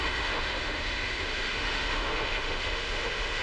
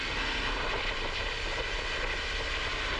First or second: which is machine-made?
first